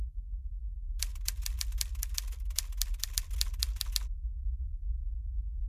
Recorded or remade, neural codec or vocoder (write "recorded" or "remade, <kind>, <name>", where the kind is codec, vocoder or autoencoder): recorded